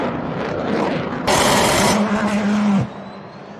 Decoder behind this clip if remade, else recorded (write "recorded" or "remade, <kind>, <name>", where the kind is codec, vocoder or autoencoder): remade, vocoder, BigVGAN v2